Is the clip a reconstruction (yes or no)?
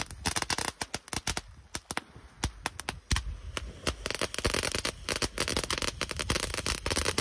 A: no